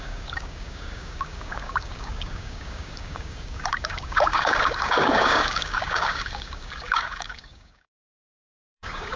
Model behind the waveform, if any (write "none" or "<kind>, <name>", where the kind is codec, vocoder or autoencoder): codec, DAC